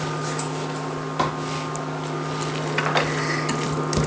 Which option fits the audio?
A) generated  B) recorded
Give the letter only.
B